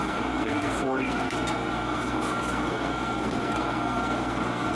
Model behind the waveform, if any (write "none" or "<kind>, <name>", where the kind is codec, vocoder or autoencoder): codec, SNAC